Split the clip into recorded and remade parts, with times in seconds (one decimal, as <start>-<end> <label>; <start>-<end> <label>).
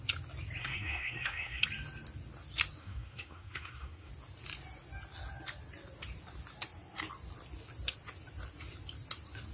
0.0-0.6 recorded; 0.6-1.6 remade; 1.6-2.8 recorded; 2.8-4.1 remade; 4.1-9.5 recorded